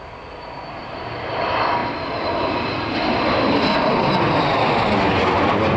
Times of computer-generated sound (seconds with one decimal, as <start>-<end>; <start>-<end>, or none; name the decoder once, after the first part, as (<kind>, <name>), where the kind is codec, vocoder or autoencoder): none